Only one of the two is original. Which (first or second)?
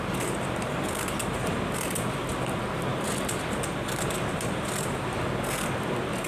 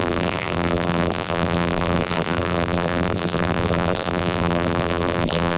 first